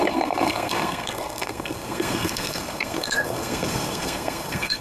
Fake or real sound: fake